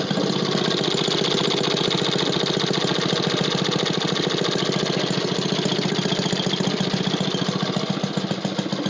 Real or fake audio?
real